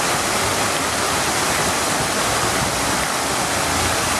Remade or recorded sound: recorded